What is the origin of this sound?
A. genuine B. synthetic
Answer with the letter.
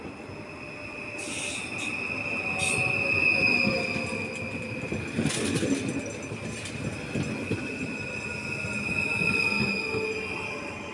A